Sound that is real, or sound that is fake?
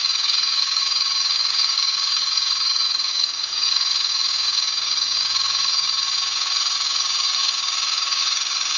fake